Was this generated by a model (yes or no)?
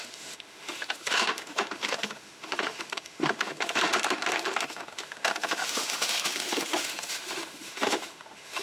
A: yes